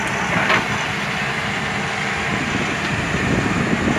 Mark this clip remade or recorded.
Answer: recorded